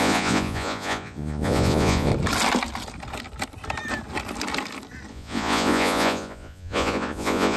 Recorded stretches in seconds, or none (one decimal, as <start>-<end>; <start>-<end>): 2.1-5.1